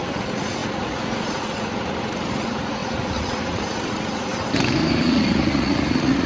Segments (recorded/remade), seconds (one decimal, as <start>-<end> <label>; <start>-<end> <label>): 0.0-4.3 remade; 4.3-5.0 recorded; 5.0-6.3 remade